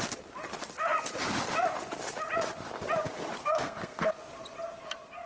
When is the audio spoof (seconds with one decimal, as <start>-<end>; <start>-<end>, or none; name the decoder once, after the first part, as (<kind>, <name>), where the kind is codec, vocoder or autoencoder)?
3.4-4.1 (codec, SNAC)